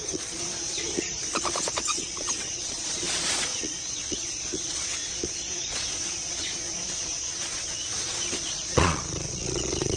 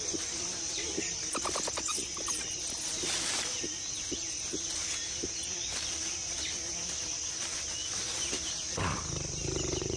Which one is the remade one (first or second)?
first